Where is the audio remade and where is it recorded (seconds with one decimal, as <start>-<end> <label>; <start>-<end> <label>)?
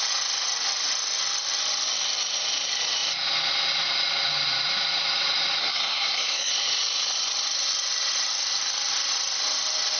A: 0.0-5.6 recorded; 5.6-6.5 remade; 6.5-10.0 recorded